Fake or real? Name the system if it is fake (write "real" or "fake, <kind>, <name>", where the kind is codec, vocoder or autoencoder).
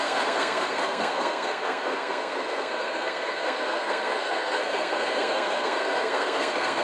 fake, codec, SNAC